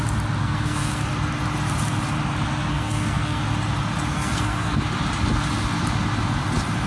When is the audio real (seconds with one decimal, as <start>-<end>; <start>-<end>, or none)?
0.0-0.4; 1.1-2.7; 3.4-4.1; 4.8-6.9